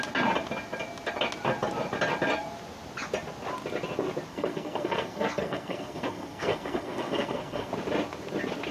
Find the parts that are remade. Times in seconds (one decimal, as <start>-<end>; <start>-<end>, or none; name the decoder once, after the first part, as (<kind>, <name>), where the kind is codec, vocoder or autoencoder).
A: 4.3-7.7 (codec, SNAC)